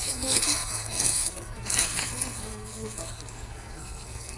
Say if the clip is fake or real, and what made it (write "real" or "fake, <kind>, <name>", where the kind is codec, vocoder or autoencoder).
fake, codec, SNAC